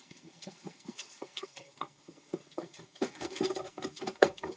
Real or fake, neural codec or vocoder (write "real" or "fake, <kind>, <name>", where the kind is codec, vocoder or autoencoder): fake, codec, SNAC